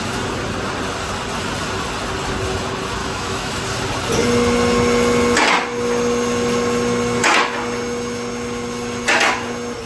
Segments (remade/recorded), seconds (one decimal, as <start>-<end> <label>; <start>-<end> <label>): 0.0-3.0 recorded; 3.0-3.6 remade; 3.6-9.9 recorded